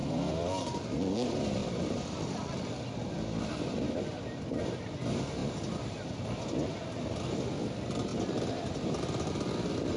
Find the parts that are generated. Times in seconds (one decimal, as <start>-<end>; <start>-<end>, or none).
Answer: 1.6-4.8; 5.4-7.3; 8.1-9.3